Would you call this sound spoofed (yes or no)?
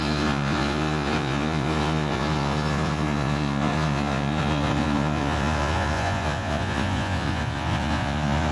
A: yes